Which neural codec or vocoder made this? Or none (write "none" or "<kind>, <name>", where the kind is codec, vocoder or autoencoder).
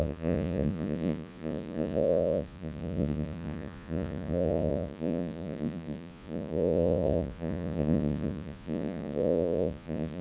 vocoder, Vocos